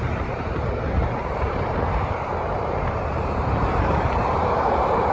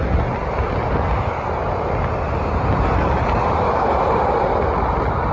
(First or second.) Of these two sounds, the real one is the second